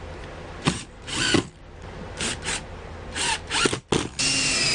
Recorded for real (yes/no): yes